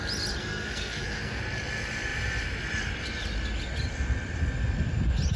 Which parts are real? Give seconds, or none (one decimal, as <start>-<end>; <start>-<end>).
0.0-0.4; 1.4-5.4